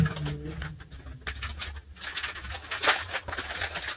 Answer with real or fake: real